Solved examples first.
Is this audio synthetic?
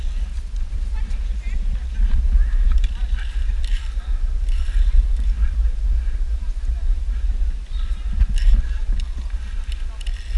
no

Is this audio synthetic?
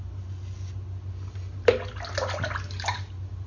no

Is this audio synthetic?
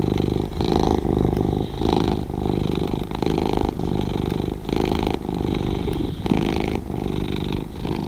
no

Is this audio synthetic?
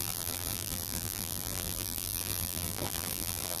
yes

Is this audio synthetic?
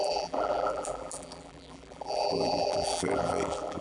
yes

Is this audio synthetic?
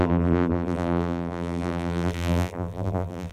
yes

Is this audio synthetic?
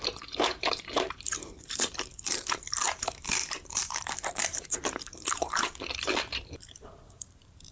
yes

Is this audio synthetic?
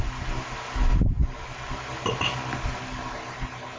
no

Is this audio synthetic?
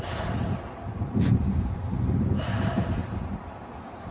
yes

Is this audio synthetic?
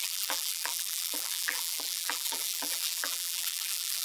yes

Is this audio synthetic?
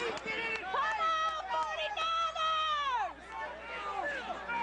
no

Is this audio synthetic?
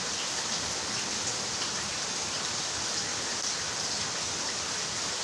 no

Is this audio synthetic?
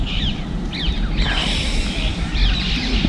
yes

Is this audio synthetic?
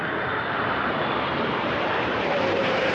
yes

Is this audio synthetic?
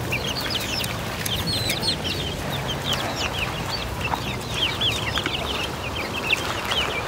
no